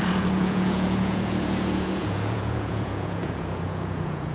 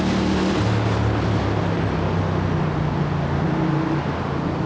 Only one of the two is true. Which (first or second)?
second